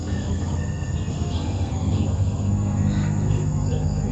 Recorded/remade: remade